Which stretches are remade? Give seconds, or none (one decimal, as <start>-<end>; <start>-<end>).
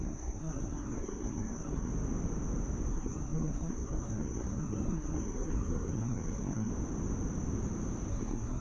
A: 0.0-1.9; 2.9-6.7; 8.1-8.6